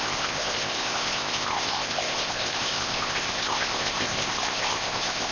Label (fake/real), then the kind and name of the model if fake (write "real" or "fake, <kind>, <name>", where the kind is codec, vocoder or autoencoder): fake, codec, ZipCodec